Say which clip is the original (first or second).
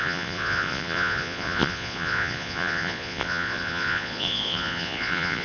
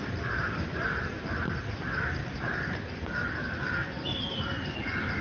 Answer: second